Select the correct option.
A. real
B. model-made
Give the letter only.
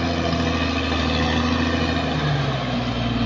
A